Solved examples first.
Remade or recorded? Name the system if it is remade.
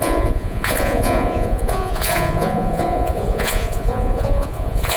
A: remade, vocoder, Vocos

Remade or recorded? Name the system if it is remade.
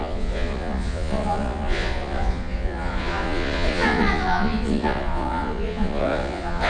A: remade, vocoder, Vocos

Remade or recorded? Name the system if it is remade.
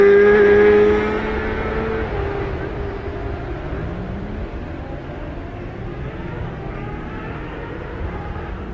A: recorded